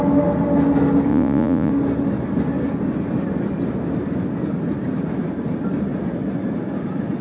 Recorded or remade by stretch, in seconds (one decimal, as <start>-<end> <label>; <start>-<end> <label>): 0.0-1.1 recorded; 1.1-1.7 remade; 1.7-7.2 recorded